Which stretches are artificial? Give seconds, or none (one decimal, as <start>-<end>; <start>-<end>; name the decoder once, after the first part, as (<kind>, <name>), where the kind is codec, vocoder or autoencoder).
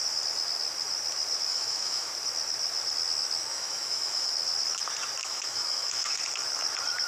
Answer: 1.5-2.1 (autoencoder, DAC-VAE); 3.5-4.3; 5.2-6.2